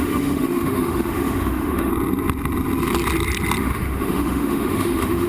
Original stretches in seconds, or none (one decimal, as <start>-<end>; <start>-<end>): 1.9-3.6